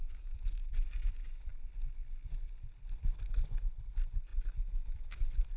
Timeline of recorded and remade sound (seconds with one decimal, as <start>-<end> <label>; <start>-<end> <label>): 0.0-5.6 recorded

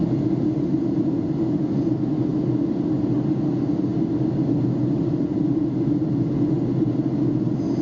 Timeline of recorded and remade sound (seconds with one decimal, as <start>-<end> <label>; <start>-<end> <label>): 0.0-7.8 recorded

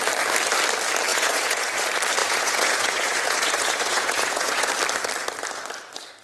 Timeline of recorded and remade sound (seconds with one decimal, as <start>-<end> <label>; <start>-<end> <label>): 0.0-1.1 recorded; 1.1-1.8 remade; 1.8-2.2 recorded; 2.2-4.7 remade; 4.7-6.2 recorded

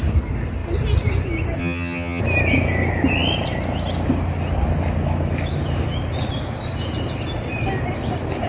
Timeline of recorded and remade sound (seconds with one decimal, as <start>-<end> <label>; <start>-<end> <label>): 0.0-1.6 recorded; 1.6-2.2 remade; 2.2-8.5 recorded

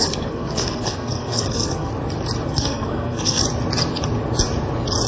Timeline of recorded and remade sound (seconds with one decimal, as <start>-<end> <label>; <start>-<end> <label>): 0.0-1.9 remade; 1.9-2.5 recorded; 2.5-3.4 remade; 3.4-5.1 recorded